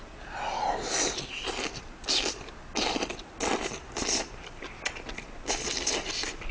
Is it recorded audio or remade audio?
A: recorded